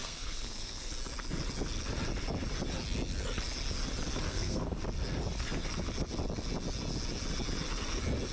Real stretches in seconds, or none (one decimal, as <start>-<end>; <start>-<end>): 0.9-4.3; 4.8-8.3